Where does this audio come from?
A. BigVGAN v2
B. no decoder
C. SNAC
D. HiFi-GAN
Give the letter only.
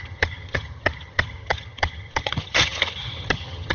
D